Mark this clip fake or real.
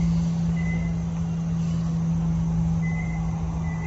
real